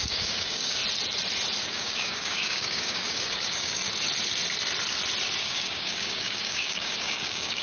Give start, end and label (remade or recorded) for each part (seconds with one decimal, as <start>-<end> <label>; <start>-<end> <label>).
0.0-0.8 remade; 0.8-1.6 recorded; 1.6-3.8 remade; 3.8-5.4 recorded; 5.4-7.6 remade